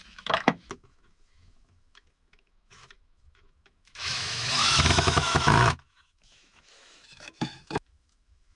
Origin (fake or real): fake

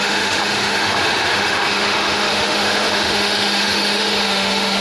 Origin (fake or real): fake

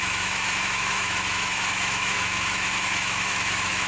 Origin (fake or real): fake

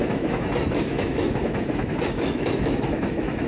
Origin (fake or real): fake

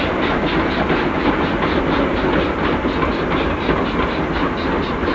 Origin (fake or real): real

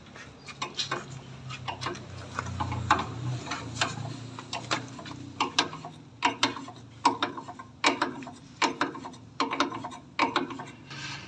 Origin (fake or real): real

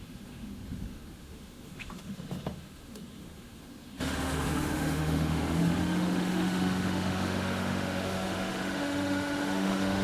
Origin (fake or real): fake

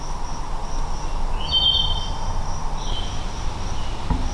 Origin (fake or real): real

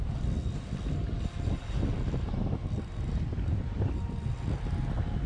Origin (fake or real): real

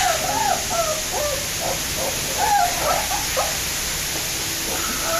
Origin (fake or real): real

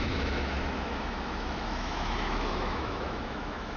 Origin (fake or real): fake